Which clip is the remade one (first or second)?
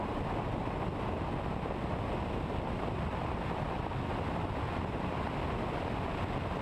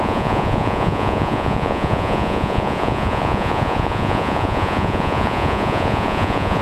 second